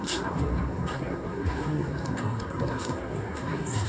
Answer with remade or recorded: remade